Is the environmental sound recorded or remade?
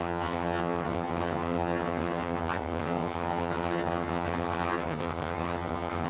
remade